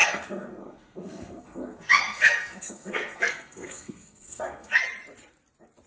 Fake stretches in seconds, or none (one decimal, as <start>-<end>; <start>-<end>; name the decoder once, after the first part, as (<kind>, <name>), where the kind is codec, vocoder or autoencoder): 0.0-4.8 (codec, SNAC)